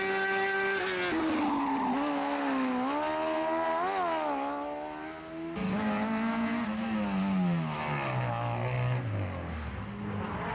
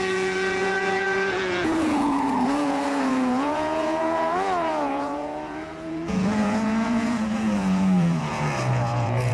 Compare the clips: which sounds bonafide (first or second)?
first